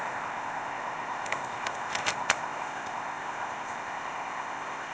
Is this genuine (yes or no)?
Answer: no